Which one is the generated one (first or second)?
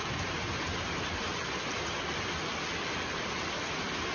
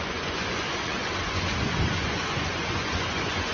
second